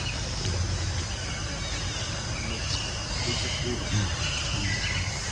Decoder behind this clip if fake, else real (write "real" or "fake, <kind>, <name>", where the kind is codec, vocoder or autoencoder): real